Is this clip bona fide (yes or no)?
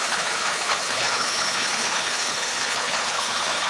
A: no